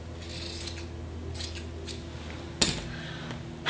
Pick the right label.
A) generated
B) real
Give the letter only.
B